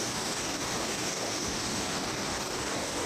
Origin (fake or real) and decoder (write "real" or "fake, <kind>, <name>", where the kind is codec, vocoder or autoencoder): fake, codec, DAC